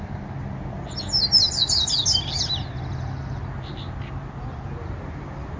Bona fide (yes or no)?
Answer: yes